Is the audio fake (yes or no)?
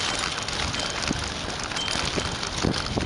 no